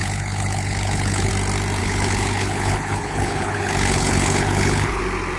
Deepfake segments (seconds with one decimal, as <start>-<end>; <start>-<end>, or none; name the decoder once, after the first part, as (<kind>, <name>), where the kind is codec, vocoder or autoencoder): 0.0-1.3 (codec, HILCodec); 1.8-5.0